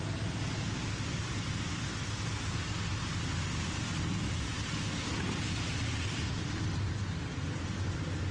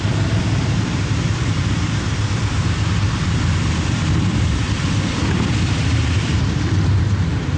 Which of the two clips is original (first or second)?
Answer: first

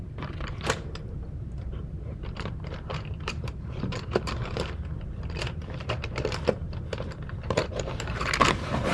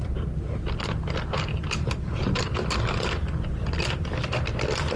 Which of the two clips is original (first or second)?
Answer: second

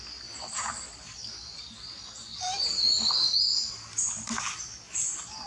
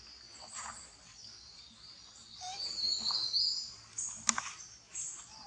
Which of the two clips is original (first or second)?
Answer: second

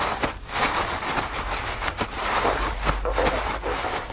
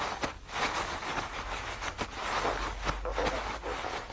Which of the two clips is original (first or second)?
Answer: second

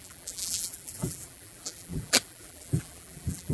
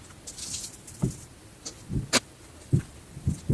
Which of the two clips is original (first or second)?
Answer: second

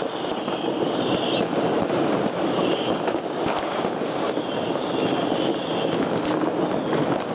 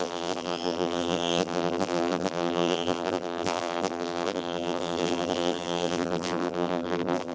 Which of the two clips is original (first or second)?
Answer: first